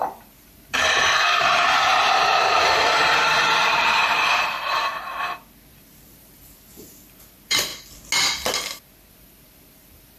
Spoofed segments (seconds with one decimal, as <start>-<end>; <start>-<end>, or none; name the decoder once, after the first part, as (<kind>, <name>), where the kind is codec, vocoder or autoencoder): 0.0-1.9 (vocoder, BigVGAN v2); 2.6-4.9; 5.7-7.7; 9.1-10.2

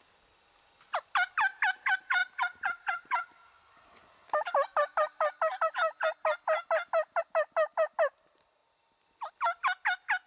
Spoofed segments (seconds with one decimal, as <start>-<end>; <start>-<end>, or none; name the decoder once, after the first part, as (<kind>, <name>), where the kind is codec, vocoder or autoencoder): none